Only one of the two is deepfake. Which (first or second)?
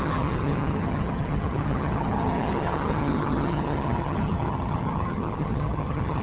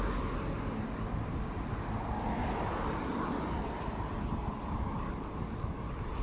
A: first